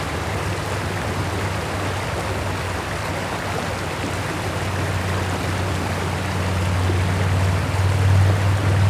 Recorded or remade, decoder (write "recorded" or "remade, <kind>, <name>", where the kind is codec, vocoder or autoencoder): recorded